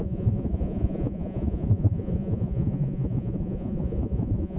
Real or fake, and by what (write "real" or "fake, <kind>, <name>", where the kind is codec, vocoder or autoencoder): fake, vocoder, Vocos